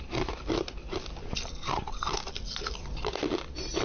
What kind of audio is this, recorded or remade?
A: recorded